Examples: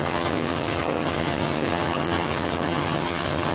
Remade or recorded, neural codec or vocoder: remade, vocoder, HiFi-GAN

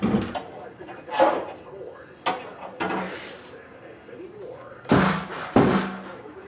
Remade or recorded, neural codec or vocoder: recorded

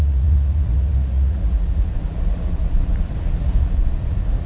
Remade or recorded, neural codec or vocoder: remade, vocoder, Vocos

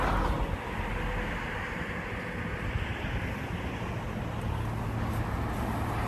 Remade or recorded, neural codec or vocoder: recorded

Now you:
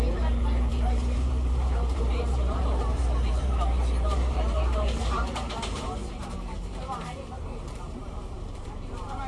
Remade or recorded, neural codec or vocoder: remade, vocoder, BigVGAN v2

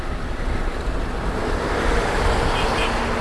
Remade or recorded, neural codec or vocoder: recorded